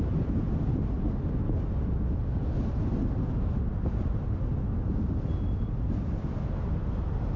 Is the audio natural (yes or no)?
yes